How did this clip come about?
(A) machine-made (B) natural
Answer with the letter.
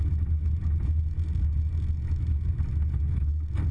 B